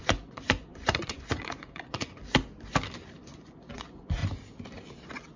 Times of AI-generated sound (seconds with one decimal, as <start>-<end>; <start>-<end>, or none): 0.0-2.2; 3.2-4.2